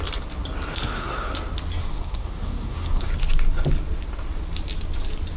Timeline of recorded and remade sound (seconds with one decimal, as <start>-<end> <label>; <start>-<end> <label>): 0.0-0.7 recorded; 0.7-1.3 remade; 1.3-1.8 recorded; 1.8-3.1 remade; 3.1-5.4 recorded